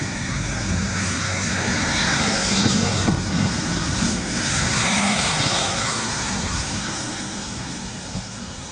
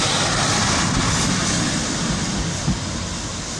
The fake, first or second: first